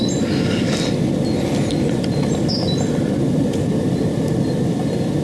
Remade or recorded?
recorded